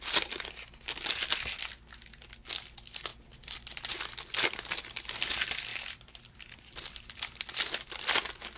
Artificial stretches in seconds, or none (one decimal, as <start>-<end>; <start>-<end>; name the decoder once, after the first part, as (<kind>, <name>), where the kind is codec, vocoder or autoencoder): 5.7-7.2 (vocoder, BigVGAN v2)